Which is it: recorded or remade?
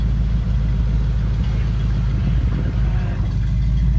recorded